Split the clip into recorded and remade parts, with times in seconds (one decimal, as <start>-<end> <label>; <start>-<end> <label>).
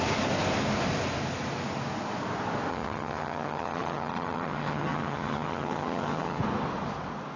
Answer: 0.0-2.7 recorded; 2.7-6.4 remade; 6.4-7.4 recorded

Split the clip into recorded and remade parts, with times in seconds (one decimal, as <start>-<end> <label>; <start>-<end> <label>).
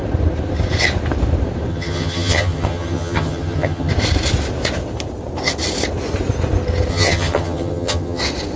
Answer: 0.0-1.7 recorded; 1.7-3.9 remade; 3.9-6.9 recorded; 6.9-8.2 remade; 8.2-8.6 recorded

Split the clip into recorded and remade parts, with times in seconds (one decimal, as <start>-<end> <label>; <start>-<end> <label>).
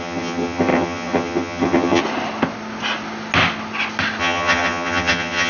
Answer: 0.0-2.0 remade; 2.0-4.2 recorded; 4.2-5.5 remade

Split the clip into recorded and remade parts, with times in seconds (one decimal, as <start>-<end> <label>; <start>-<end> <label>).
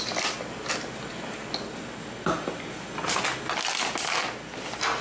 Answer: 0.0-5.0 recorded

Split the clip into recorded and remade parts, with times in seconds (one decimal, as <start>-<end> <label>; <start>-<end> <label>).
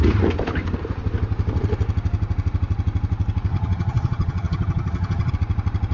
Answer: 0.0-3.5 recorded; 3.5-5.3 remade; 5.3-5.9 recorded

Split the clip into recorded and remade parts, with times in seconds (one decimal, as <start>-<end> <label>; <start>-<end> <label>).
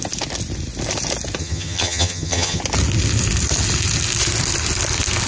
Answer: 0.0-1.4 recorded; 1.4-2.6 remade; 2.6-5.3 recorded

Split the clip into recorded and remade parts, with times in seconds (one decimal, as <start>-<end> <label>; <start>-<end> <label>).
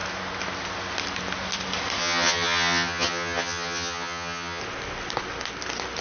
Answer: 0.0-2.0 recorded; 2.0-4.6 remade; 4.6-6.0 recorded